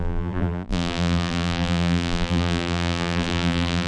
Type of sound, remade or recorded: remade